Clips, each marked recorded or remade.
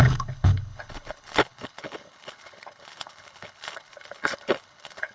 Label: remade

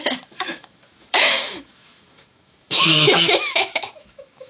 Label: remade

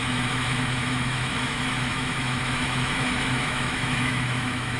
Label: remade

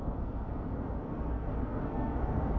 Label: remade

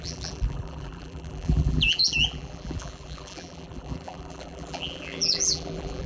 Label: remade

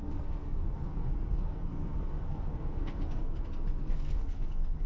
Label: remade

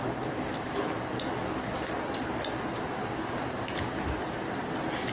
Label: recorded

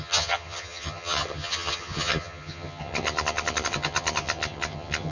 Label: remade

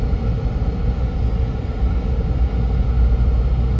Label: recorded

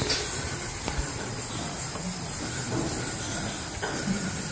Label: recorded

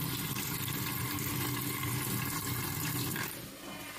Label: recorded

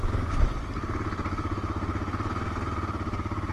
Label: recorded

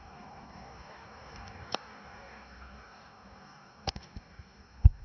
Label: remade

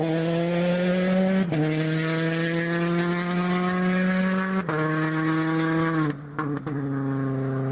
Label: recorded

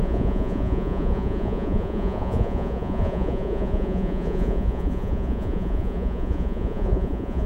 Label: remade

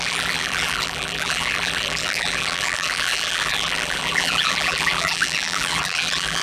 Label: remade